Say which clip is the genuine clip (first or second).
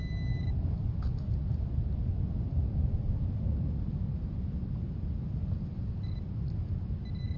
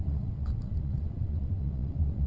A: first